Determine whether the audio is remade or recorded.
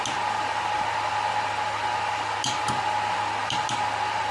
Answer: recorded